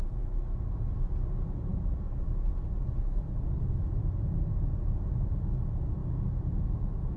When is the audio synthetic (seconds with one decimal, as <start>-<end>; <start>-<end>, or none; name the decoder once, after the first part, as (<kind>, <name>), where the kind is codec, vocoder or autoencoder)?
none